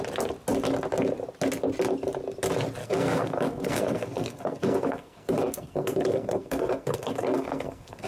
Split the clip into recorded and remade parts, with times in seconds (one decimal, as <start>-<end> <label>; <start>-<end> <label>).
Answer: 0.0-2.8 recorded; 2.8-8.1 remade